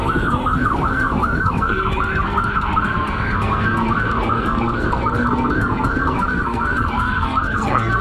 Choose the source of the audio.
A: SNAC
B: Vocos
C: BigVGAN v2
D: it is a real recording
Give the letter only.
A